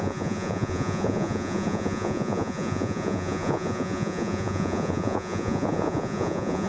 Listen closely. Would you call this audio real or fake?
fake